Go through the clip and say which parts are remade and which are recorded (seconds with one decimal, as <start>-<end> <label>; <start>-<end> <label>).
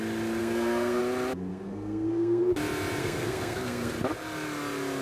0.0-0.4 recorded; 0.4-1.0 remade; 1.0-1.5 recorded; 1.5-2.4 remade; 2.4-3.0 recorded; 3.0-3.9 remade; 3.9-5.0 recorded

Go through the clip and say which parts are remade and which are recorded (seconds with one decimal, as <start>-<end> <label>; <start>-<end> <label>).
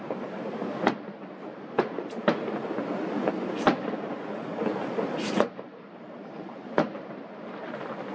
0.0-8.1 recorded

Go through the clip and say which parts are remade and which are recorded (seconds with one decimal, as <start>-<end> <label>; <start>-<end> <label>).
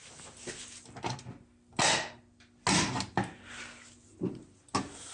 0.0-5.1 recorded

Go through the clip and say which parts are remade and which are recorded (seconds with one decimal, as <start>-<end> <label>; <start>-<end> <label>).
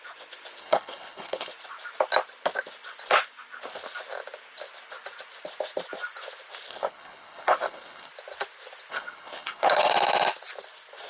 0.0-0.6 recorded; 0.6-1.5 remade; 1.5-6.7 recorded; 6.7-8.1 remade; 8.1-8.9 recorded; 8.9-9.9 remade; 9.9-11.1 recorded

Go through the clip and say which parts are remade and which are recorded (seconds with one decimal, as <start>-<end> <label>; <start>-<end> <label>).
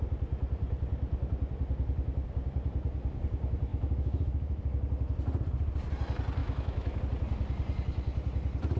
0.0-3.7 recorded; 3.7-4.6 remade; 4.6-6.4 recorded; 6.4-7.0 remade; 7.0-8.8 recorded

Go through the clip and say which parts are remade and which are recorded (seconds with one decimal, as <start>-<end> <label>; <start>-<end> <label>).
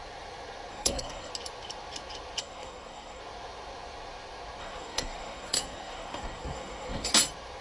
0.0-0.7 recorded; 0.7-1.3 remade; 1.3-2.4 recorded; 2.4-3.2 remade; 3.2-4.6 recorded; 4.6-7.1 remade; 7.1-7.6 recorded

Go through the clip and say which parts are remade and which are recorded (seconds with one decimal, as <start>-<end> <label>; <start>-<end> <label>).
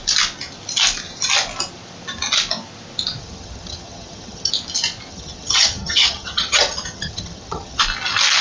0.0-3.2 recorded; 3.2-4.5 remade; 4.5-5.1 recorded; 5.1-7.8 remade; 7.8-8.4 recorded